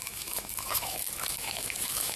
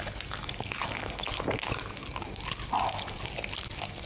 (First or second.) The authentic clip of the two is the second